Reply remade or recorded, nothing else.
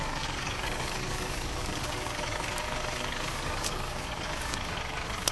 remade